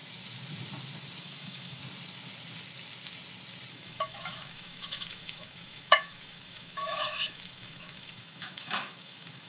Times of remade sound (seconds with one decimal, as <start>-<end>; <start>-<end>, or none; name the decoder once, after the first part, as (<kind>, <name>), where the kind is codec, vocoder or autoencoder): 1.2-1.8 (autoencoder, DAC-VAE); 3.7-9.5